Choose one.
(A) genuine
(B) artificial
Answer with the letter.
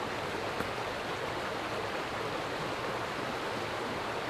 A